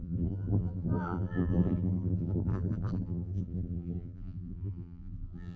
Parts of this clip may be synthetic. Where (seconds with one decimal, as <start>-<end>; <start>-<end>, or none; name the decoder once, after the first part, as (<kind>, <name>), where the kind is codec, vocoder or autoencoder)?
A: 0.0-5.6 (vocoder, BigVGAN v2)